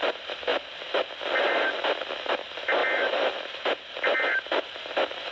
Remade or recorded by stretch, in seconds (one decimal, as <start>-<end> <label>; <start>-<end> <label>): 0.0-5.3 recorded